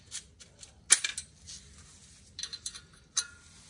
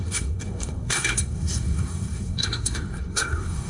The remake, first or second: second